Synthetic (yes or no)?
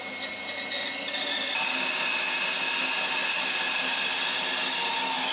no